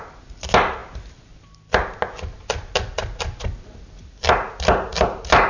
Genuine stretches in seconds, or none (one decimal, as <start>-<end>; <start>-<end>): 0.0-5.5